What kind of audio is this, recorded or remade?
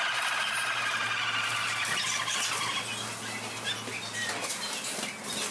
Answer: recorded